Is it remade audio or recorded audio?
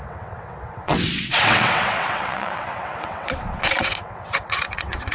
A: remade